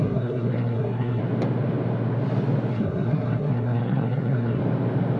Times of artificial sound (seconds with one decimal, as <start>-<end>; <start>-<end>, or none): 0.0-1.2; 2.7-4.6